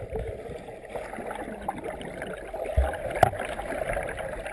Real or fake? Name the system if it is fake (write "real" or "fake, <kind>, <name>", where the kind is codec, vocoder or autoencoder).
real